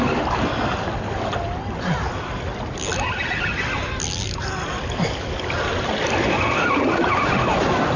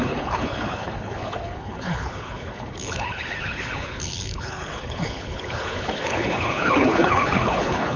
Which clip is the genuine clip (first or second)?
first